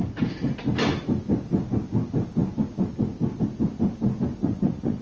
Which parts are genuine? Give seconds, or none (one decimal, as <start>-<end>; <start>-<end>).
0.0-4.4